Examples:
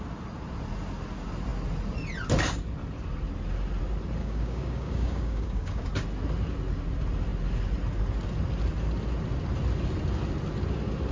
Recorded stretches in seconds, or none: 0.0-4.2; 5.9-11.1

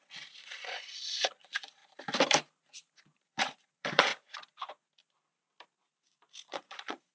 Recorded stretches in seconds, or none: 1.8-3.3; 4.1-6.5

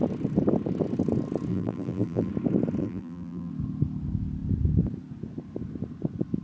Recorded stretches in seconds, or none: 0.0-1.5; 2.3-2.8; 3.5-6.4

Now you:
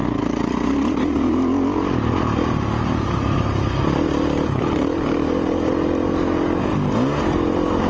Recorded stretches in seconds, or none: 0.0-7.9